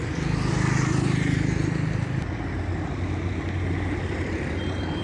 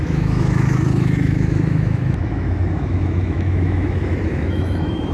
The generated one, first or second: second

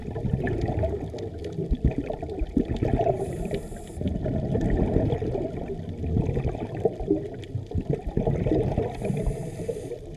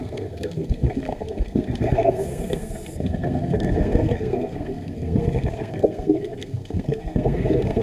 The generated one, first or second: second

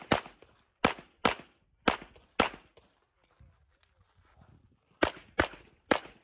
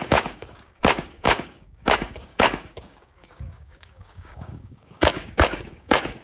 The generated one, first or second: second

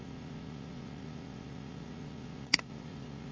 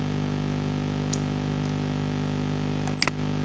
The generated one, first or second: first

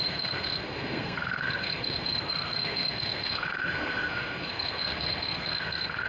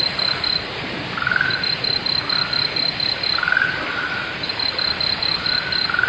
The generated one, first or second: first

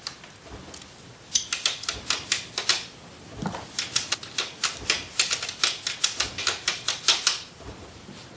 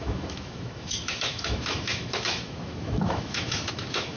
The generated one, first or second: second